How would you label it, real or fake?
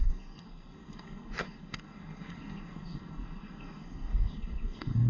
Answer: fake